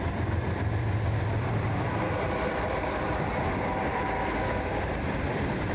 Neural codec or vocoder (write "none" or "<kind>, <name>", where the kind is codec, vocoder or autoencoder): vocoder, BigVGAN v2